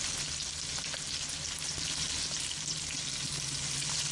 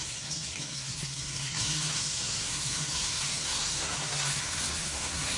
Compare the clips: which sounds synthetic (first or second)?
second